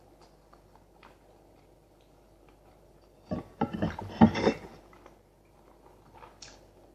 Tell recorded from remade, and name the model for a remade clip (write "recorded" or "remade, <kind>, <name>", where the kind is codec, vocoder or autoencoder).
remade, vocoder, BigVGAN v2